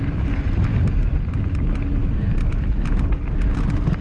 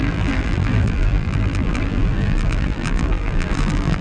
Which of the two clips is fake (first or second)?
second